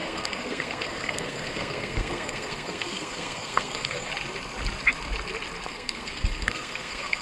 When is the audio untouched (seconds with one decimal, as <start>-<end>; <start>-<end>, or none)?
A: 4.1-5.7